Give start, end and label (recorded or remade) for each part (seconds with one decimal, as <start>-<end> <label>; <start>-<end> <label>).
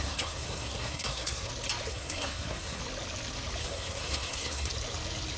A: 0.0-1.5 remade; 1.5-1.9 recorded; 1.9-2.8 remade; 2.8-3.6 recorded; 3.6-4.7 remade; 4.7-5.4 recorded